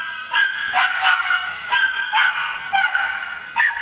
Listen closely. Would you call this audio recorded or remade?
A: remade